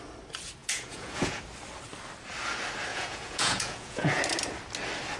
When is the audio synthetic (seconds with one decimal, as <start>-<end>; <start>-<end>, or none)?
0.6-1.4; 2.9-4.2